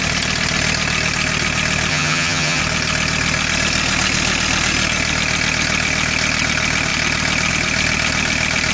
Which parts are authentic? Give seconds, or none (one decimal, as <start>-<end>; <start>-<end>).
0.0-1.9; 2.6-8.7